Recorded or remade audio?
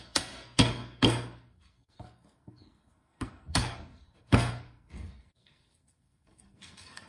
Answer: remade